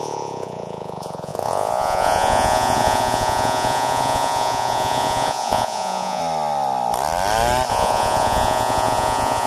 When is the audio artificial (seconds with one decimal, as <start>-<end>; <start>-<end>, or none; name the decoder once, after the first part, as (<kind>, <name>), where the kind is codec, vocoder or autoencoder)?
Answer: 0.0-6.2 (vocoder, Vocos); 7.7-9.5

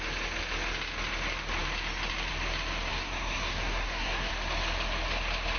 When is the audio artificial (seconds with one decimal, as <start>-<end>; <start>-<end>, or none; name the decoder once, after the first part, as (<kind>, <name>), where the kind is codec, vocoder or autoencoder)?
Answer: 2.9-4.3 (codec, SNAC)

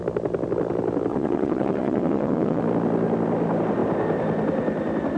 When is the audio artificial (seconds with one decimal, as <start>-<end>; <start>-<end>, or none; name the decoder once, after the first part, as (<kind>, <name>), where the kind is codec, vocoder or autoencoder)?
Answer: 1.1-2.6 (vocoder, Vocos)

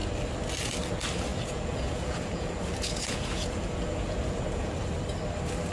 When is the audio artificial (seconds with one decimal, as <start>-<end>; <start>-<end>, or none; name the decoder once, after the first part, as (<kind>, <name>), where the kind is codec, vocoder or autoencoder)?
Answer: 1.3-4.7 (vocoder, Vocos)